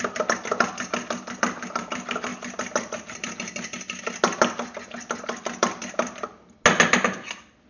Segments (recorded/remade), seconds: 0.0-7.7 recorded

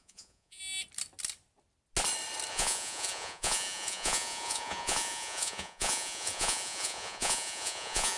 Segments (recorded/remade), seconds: 0.0-0.6 remade; 0.6-2.5 recorded; 2.5-8.2 remade

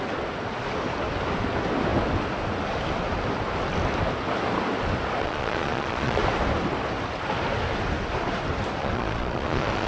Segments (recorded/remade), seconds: 0.0-5.2 recorded; 5.2-6.2 remade; 6.2-8.8 recorded; 8.8-9.9 remade

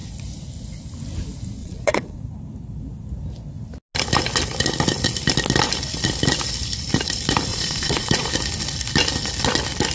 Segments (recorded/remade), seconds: 0.0-1.6 recorded; 1.6-2.2 remade; 2.2-7.5 recorded; 7.5-8.3 remade; 8.3-9.9 recorded